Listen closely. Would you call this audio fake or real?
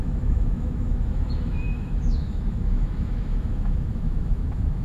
fake